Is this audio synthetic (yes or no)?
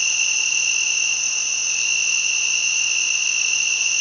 no